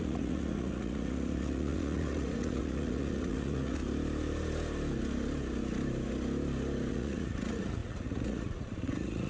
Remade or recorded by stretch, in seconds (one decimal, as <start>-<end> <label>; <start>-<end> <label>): 0.0-3.8 remade; 3.8-6.9 recorded; 6.9-9.3 remade